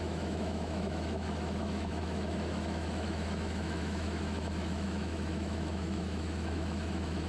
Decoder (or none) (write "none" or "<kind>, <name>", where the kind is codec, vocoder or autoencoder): autoencoder, DAC-VAE